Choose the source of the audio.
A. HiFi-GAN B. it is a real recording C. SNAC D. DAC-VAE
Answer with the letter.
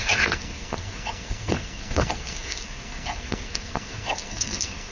C